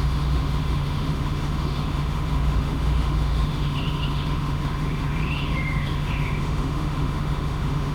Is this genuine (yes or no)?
no